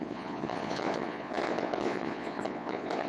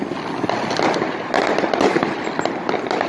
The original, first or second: second